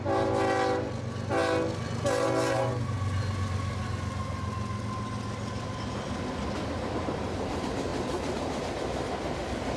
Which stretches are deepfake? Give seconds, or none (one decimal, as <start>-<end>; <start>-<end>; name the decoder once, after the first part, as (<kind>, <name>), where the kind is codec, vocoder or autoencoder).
none